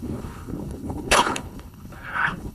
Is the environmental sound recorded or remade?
remade